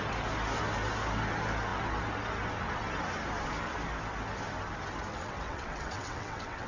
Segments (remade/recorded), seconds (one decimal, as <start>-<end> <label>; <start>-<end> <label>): 0.0-5.1 recorded; 5.1-6.7 remade